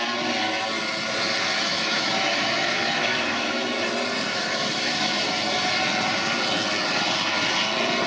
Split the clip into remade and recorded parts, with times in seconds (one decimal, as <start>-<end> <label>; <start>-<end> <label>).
0.0-1.5 recorded; 1.5-3.8 remade; 3.8-4.3 recorded; 4.3-5.3 remade; 5.3-8.1 recorded